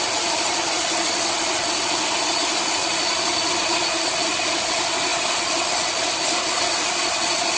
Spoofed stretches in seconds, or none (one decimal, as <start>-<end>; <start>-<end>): none